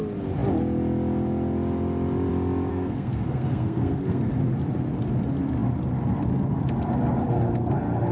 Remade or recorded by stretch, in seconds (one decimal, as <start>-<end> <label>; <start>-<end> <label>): 0.0-2.7 recorded; 2.7-4.3 remade; 4.3-8.1 recorded